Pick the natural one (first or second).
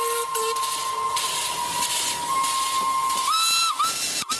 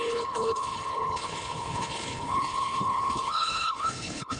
first